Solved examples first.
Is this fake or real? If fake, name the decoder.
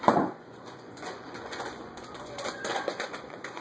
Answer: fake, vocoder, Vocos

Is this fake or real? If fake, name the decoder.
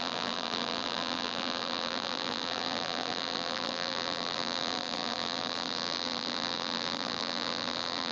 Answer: fake, vocoder, BigVGAN v2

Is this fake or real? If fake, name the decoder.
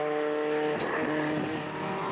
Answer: real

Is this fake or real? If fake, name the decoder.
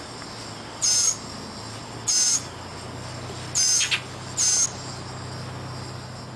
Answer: real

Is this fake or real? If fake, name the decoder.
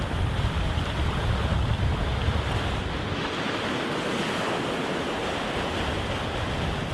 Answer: real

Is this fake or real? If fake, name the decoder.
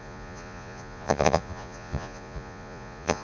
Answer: fake, vocoder, Vocos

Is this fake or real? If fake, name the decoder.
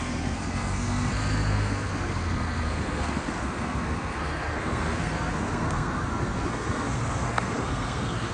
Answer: fake, codec, SNAC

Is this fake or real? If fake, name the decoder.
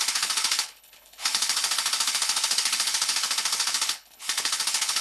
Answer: fake, codec, HILCodec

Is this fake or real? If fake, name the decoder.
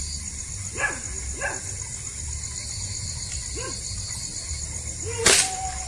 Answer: real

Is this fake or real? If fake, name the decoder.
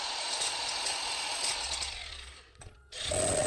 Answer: fake, vocoder, Vocos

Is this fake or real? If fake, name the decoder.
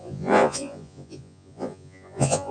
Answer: fake, vocoder, Vocos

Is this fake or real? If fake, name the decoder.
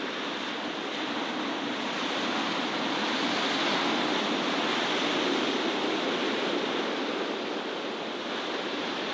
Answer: real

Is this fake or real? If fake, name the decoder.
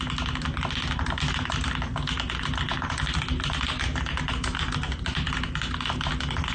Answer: real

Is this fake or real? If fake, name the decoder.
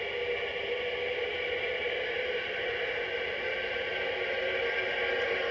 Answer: real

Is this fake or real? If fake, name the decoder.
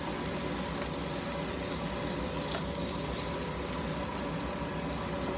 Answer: real